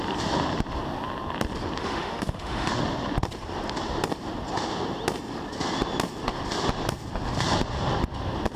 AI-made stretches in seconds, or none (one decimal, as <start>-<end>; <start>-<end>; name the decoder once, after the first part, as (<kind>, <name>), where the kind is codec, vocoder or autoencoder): 1.8-2.7 (autoencoder, DAC-VAE)